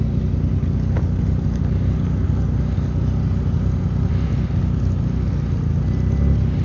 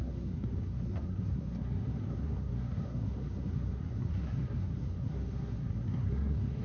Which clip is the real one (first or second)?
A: first